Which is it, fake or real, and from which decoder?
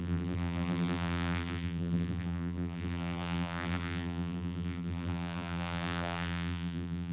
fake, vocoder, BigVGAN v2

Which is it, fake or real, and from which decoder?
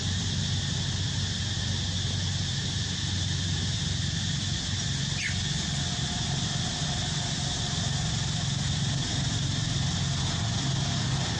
real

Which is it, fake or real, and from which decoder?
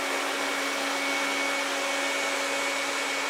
real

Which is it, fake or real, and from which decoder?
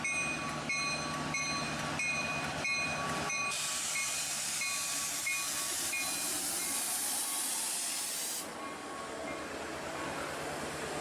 real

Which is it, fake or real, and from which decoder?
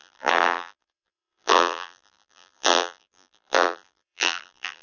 fake, vocoder, BigVGAN v2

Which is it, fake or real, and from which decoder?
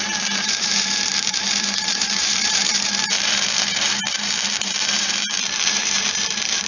fake, vocoder, BigVGAN v2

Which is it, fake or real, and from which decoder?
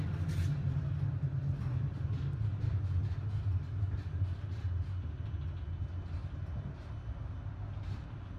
real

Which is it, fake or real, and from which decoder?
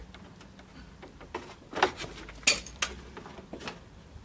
real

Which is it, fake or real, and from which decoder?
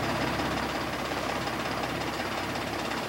fake, vocoder, BigVGAN v2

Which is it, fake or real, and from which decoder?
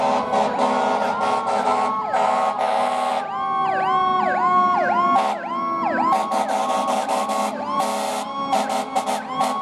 real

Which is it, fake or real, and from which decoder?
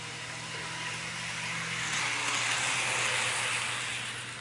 real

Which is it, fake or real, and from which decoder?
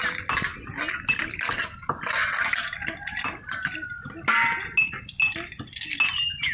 real